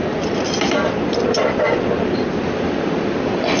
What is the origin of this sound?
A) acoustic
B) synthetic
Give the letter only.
A